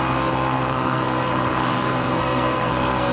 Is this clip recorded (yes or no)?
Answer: no